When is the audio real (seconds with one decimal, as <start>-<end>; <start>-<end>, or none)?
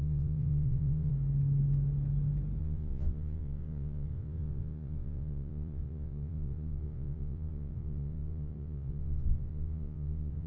1.1-2.6